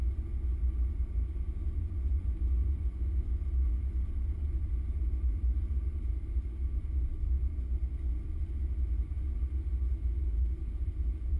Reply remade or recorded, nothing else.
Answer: recorded